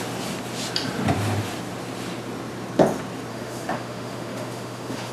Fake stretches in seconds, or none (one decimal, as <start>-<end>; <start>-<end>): 3.3-5.1